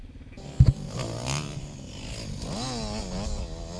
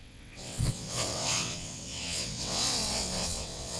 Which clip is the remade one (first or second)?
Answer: second